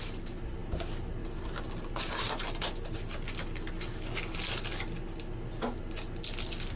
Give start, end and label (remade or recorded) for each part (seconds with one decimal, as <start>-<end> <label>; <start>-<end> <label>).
0.0-6.8 recorded